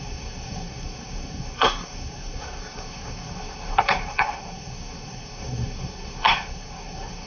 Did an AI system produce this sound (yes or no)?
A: yes